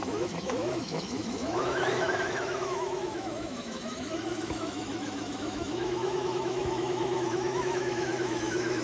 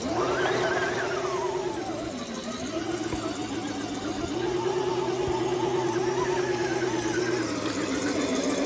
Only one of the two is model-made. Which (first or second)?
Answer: first